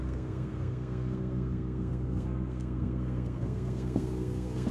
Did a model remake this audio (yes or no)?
yes